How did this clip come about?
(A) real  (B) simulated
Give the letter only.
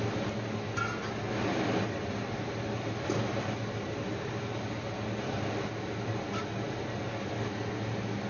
A